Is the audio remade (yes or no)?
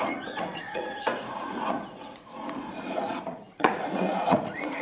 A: yes